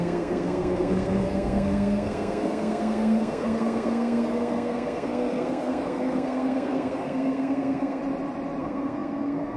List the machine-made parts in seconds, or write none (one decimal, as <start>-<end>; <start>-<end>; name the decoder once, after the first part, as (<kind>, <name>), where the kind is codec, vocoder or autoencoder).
0.0-8.0 (codec, SNAC); 8.6-9.6